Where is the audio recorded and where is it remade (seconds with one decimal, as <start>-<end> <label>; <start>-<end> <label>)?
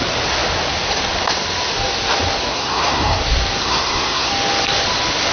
0.0-2.5 recorded; 2.5-3.2 remade; 3.2-3.6 recorded; 3.6-4.3 remade; 4.3-5.3 recorded